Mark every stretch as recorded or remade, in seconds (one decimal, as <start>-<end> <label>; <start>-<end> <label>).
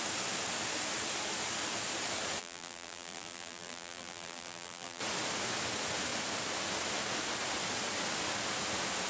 0.0-2.4 recorded; 2.4-5.0 remade; 5.0-9.1 recorded